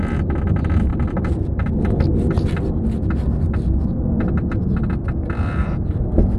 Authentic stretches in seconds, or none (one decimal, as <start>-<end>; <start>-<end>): 0.0-0.9; 1.5-6.4